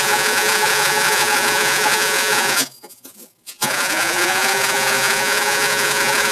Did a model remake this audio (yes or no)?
yes